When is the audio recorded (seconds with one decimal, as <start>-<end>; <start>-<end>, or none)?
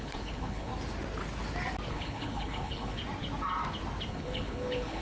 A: 0.7-1.9; 3.0-4.1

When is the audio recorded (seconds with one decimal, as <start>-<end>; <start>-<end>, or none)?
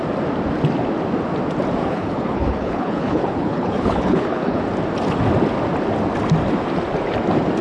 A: 0.0-1.8; 4.6-7.6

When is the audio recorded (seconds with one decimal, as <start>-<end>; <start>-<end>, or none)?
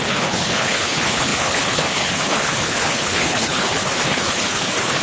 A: none